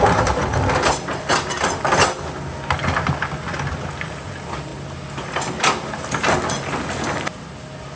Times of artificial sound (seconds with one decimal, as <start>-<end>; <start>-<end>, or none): none